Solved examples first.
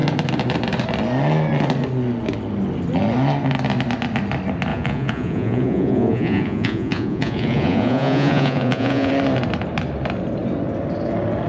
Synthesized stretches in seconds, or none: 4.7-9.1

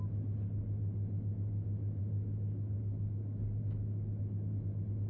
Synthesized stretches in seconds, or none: 2.0-3.6

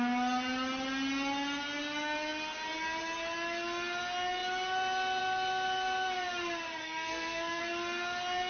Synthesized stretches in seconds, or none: 6.8-7.6

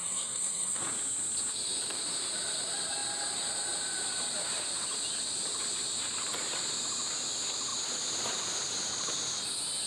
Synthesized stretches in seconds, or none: 0.0-0.8

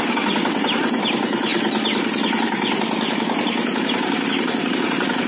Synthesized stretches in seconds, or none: none

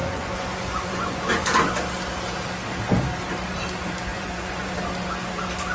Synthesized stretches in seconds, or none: 0.0-1.3; 4.1-4.7

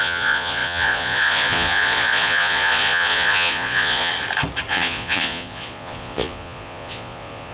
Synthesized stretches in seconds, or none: 0.0-4.1; 4.7-7.5